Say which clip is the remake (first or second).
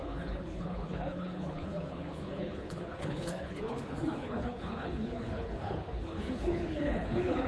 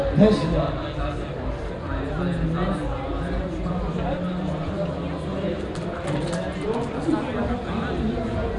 first